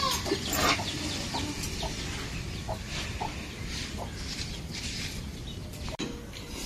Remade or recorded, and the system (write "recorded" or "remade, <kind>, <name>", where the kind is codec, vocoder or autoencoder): recorded